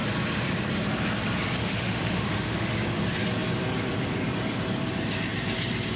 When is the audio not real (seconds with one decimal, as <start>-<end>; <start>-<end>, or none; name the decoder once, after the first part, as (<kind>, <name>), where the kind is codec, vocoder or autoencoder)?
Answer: 1.6-2.7 (autoencoder, DAC-VAE)